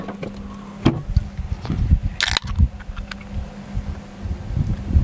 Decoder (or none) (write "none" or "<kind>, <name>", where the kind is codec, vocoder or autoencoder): none